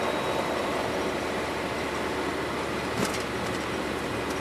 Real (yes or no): yes